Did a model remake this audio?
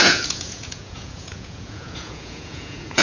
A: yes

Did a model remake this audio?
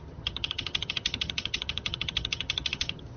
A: yes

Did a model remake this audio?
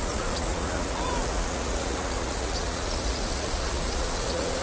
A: yes